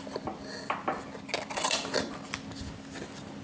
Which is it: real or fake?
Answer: real